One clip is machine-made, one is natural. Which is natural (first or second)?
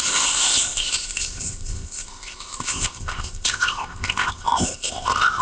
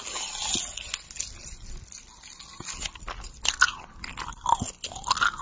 second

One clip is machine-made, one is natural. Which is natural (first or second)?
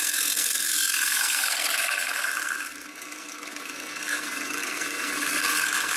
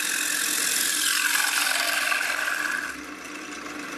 second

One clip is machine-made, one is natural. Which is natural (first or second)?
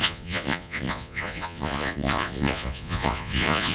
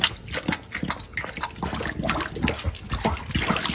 second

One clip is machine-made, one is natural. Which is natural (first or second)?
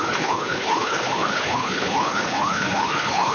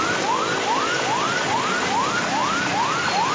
second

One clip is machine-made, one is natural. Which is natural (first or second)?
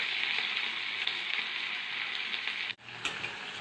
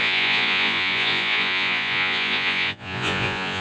first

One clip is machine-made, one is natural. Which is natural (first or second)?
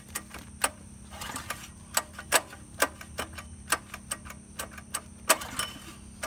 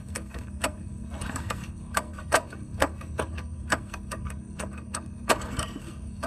first